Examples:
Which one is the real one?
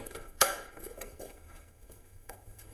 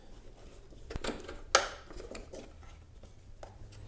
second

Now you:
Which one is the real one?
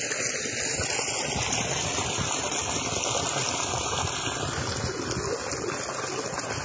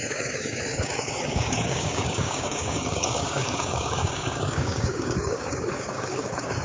first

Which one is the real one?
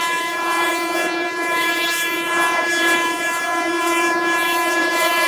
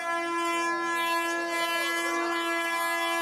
second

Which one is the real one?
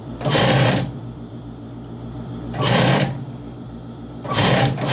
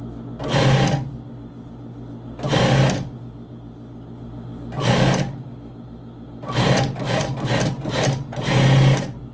second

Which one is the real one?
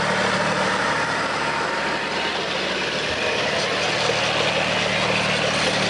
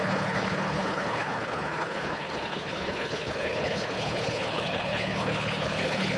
first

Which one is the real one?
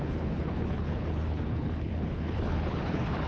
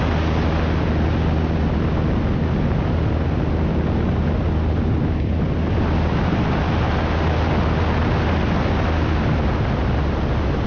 second